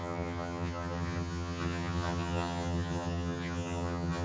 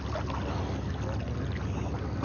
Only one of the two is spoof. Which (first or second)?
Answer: first